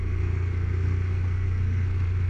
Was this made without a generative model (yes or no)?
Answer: no